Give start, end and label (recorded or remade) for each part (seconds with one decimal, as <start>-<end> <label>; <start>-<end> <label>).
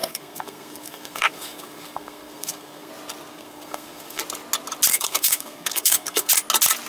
0.0-2.9 remade; 2.9-3.3 recorded; 3.3-4.2 remade; 4.2-4.9 recorded; 4.9-6.3 remade; 6.3-6.9 recorded